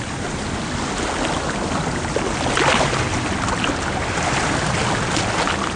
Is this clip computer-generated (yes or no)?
no